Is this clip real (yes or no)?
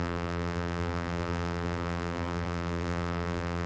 no